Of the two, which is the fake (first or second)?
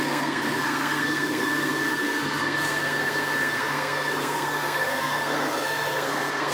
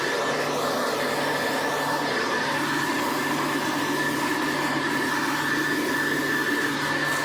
first